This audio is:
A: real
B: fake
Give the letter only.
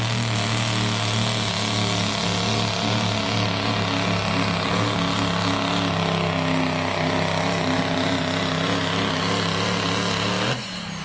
A